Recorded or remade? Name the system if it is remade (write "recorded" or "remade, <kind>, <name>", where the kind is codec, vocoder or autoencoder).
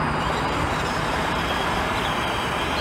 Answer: remade, vocoder, BigVGAN v2